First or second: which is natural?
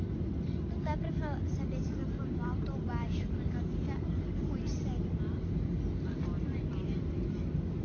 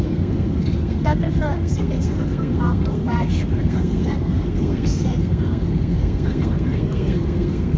first